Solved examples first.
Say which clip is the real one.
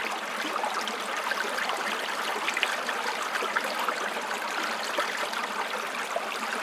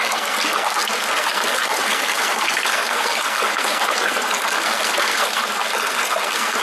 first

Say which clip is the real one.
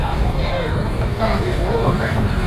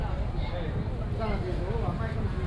second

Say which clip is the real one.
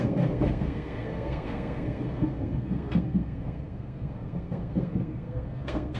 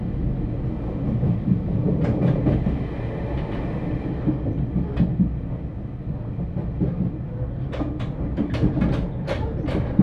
second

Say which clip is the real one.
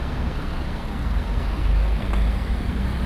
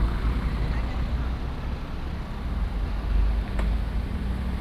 second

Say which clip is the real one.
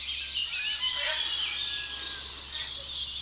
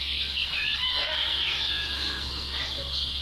first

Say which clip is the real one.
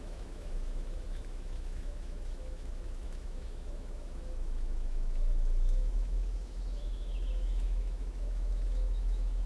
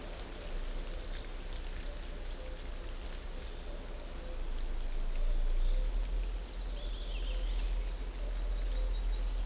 second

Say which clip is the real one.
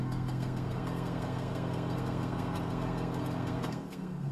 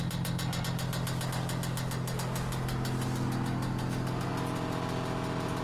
second